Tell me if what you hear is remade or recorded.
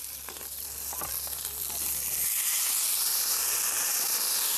recorded